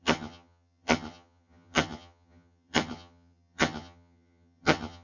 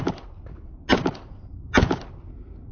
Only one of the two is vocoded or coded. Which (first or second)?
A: first